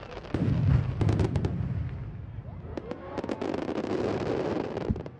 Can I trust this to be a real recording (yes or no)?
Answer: yes